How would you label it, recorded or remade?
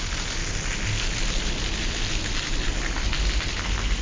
recorded